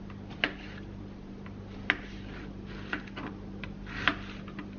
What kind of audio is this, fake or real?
real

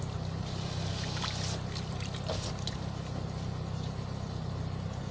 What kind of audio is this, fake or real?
real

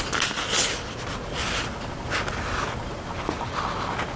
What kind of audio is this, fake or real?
real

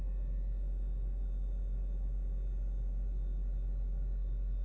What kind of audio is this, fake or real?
real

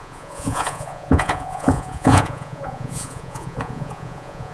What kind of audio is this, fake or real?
fake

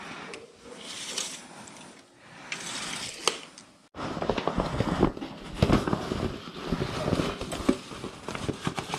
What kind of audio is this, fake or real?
real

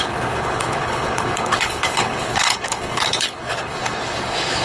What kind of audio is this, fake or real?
fake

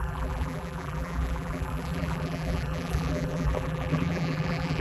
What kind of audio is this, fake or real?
fake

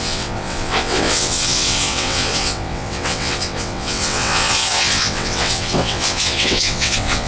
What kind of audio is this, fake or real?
fake